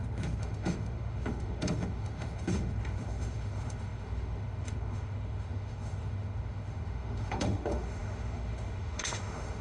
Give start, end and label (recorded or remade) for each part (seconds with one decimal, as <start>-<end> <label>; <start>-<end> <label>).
0.0-9.6 remade